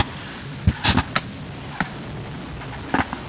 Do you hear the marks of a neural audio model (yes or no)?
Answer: no